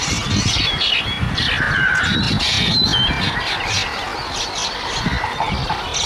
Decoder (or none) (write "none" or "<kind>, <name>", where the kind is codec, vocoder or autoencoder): none